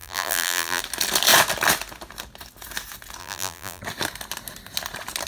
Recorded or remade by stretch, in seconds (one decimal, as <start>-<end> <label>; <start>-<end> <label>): 0.0-0.8 remade; 0.8-3.2 recorded; 3.2-3.8 remade; 3.8-5.3 recorded